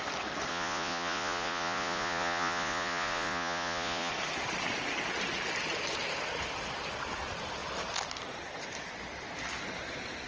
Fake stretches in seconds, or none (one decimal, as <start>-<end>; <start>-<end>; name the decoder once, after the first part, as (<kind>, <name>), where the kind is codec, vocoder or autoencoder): 0.5-4.1 (vocoder, Vocos)

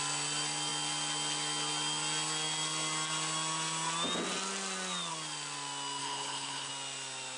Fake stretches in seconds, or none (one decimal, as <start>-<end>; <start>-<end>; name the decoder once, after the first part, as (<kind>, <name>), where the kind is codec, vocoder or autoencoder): 6.0-6.7 (codec, HILCodec)